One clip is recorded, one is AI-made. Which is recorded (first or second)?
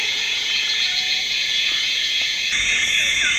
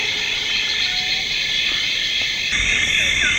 second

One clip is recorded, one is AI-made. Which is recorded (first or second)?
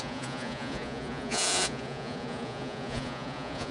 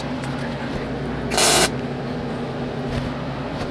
second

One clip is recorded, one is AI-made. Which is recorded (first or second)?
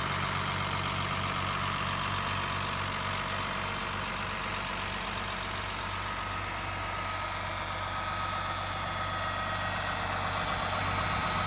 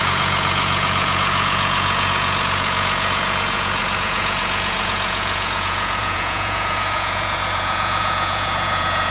first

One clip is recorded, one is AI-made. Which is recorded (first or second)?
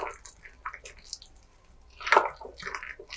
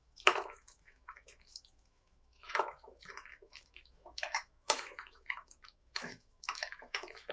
first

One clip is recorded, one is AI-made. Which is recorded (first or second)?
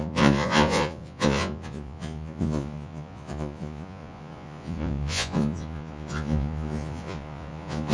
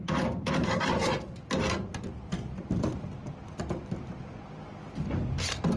second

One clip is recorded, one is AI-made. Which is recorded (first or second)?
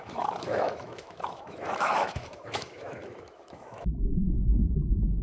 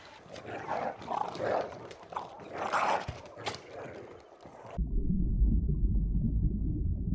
second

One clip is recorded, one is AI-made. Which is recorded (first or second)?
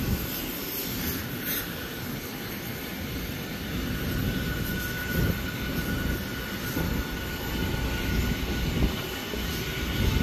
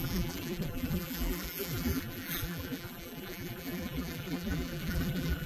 first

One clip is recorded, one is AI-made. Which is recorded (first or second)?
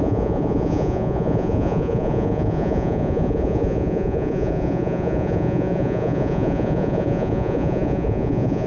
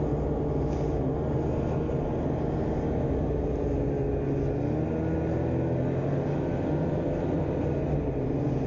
second